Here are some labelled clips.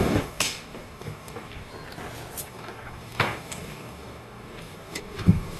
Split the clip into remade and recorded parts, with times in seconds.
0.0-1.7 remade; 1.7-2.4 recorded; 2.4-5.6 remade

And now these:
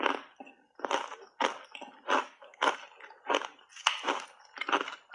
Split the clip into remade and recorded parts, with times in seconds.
0.0-2.2 recorded; 2.2-2.7 remade; 2.7-5.1 recorded

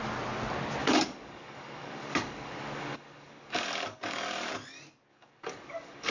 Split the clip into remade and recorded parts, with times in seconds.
0.0-0.8 recorded; 0.8-4.5 remade; 4.5-5.1 recorded; 5.1-6.1 remade